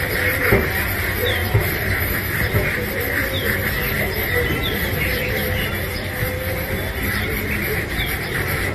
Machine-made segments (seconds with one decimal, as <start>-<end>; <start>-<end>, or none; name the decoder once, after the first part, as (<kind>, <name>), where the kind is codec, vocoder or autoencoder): 1.4-2.5 (vocoder, BigVGAN v2); 4.6-8.7